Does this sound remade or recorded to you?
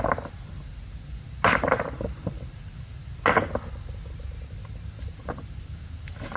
recorded